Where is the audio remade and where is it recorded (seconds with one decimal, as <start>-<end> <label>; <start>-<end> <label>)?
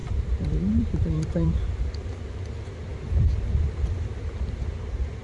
0.0-1.8 remade; 1.8-2.9 recorded; 2.9-5.2 remade